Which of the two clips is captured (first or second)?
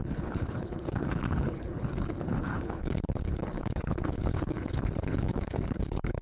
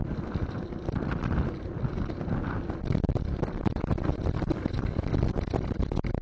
second